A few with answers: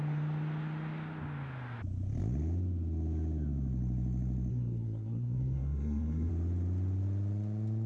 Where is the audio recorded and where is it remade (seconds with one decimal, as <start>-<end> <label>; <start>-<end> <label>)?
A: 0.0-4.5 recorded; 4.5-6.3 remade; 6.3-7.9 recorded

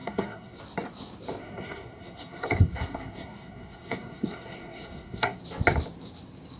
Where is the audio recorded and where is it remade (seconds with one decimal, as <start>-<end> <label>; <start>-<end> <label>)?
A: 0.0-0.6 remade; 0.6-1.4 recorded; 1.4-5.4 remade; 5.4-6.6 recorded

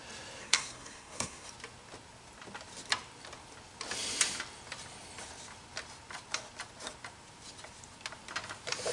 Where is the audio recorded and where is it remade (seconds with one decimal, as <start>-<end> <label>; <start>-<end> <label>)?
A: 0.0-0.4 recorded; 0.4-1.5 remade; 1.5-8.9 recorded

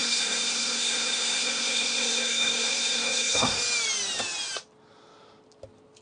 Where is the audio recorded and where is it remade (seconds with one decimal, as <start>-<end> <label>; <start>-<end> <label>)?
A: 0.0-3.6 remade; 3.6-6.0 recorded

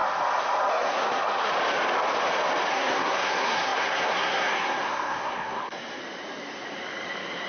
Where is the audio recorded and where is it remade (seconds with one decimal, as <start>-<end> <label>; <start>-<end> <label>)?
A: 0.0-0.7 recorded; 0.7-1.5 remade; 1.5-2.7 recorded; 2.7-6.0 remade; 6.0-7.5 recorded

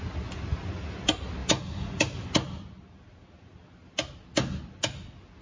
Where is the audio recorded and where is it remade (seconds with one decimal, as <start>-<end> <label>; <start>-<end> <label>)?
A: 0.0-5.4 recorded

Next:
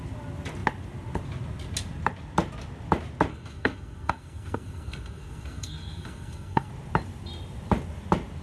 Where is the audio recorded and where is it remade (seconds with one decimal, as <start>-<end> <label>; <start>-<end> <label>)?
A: 0.0-3.3 recorded; 3.3-6.7 remade; 6.7-8.4 recorded